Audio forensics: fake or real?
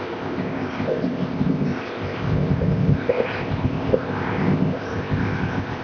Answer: fake